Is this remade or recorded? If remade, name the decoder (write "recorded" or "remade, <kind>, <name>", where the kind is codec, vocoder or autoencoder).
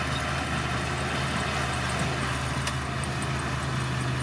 recorded